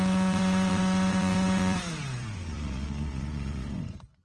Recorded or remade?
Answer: remade